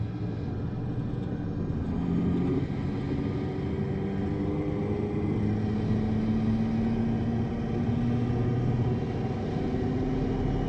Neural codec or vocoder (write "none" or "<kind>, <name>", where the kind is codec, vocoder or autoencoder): none